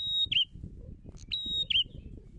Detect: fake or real real